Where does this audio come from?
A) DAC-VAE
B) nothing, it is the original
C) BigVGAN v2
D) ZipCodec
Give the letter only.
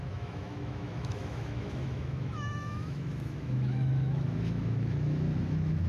A